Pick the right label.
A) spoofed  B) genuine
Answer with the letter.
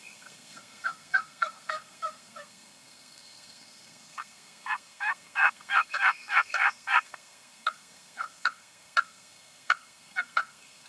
A